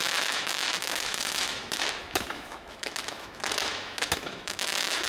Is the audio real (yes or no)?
no